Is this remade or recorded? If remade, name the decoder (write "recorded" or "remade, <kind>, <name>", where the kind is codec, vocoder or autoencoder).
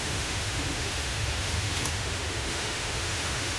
remade, autoencoder, DAC-VAE